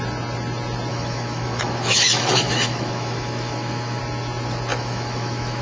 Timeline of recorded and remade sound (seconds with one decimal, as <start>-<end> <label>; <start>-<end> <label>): 0.0-0.9 recorded; 0.9-4.0 remade; 4.0-4.7 recorded; 4.7-5.6 remade